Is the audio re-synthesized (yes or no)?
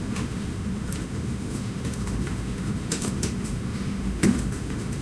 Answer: yes